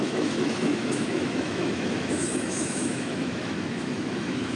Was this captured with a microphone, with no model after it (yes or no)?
no